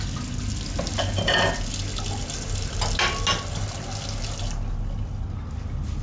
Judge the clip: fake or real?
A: real